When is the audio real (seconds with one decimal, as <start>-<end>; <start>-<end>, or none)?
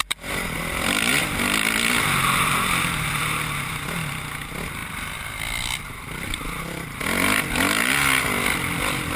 0.0-9.2